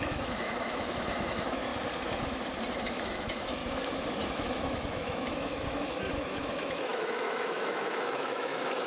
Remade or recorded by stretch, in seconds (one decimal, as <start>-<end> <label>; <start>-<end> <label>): 0.0-1.7 remade; 1.7-2.8 recorded; 2.8-3.6 remade; 3.6-4.3 recorded; 4.3-8.9 remade